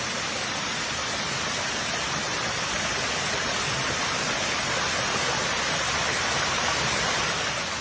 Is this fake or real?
real